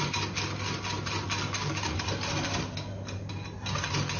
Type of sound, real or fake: real